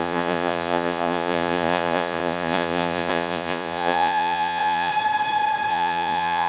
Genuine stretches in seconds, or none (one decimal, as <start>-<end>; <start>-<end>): 4.9-5.7

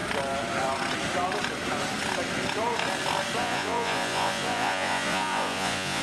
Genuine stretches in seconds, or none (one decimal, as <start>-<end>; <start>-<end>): 0.0-3.4

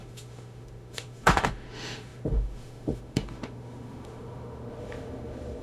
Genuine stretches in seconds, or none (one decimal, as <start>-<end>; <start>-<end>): none